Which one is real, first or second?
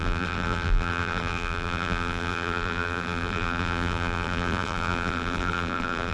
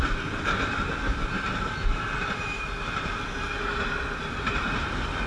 second